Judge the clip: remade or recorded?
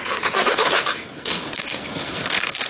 remade